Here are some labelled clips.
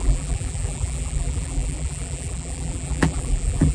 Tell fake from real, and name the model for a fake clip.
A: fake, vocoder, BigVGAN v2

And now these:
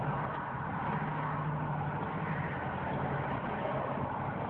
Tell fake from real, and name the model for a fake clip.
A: real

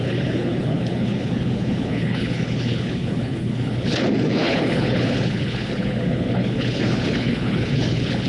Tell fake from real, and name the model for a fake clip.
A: fake, codec, HILCodec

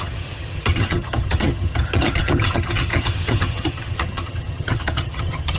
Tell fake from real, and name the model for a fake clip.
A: fake, vocoder, HiFi-GAN